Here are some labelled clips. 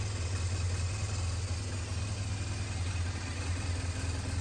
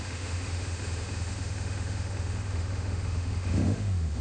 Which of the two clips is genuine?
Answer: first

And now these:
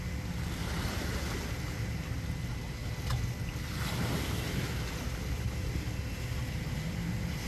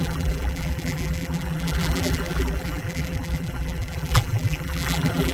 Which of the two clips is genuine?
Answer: first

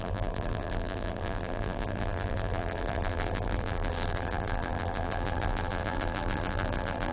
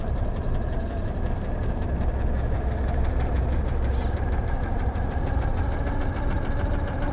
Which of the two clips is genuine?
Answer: second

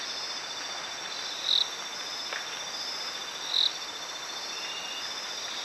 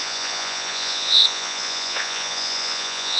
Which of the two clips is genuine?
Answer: first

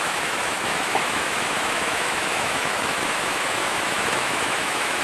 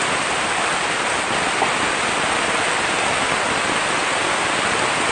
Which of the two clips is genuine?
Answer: second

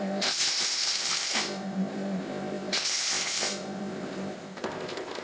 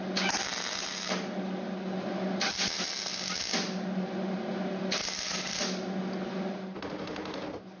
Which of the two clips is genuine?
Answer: second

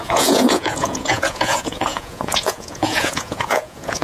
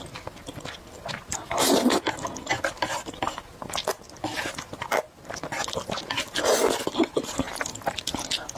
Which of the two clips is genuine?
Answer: second